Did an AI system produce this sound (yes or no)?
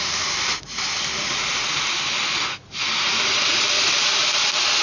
no